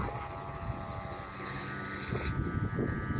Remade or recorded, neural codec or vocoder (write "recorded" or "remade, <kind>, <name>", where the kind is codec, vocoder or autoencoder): recorded